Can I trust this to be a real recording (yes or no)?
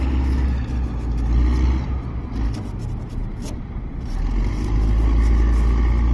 yes